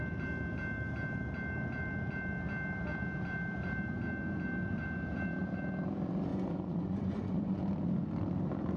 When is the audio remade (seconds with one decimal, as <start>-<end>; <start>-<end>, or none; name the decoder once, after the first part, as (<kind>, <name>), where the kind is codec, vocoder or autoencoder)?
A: 6.3-7.6 (vocoder, Vocos)